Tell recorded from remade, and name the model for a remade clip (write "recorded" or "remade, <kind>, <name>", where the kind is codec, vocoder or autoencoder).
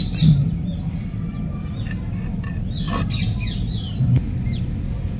recorded